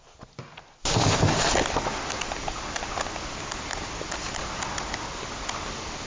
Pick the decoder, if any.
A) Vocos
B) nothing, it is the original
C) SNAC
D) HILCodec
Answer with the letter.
B